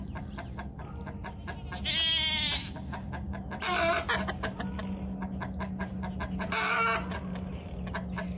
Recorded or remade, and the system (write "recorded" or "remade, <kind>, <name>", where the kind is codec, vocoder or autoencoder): recorded